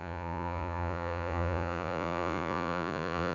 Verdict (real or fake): fake